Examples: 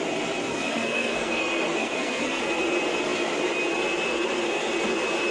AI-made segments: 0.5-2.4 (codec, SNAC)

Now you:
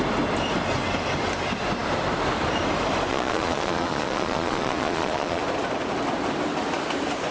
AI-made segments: 3.1-5.4 (vocoder, Vocos)

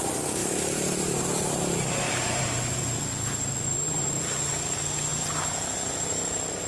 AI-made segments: 0.4-2.8 (vocoder, BigVGAN v2)

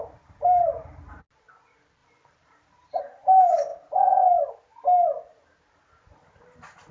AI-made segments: 0.0-1.2 (vocoder, BigVGAN v2); 2.0-3.0

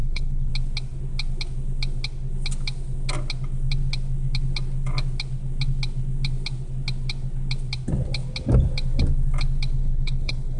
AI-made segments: 0.0-0.5 (codec, HILCodec); 9.8-10.6